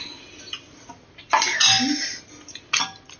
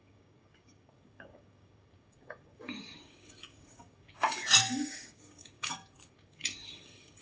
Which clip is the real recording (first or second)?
first